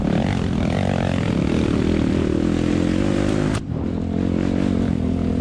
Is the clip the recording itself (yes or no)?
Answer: yes